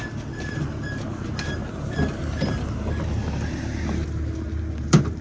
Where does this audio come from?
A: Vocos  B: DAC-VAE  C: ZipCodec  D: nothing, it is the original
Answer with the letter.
D